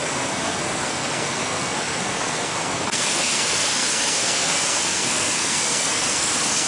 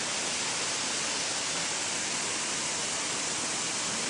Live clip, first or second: second